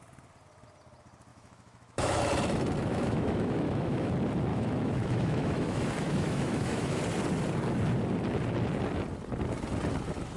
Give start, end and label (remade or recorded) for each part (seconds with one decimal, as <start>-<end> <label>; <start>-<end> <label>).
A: 0.0-1.3 recorded; 1.3-2.2 remade; 2.2-2.9 recorded; 2.9-4.1 remade; 4.1-4.5 recorded; 4.5-7.0 remade; 7.0-10.4 recorded